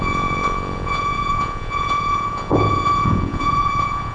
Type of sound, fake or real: fake